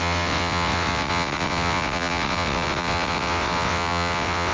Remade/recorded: remade